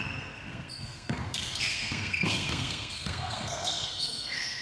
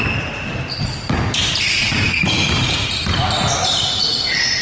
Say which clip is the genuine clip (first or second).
second